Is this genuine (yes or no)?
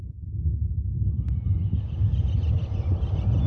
yes